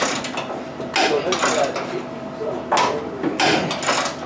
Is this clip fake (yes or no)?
no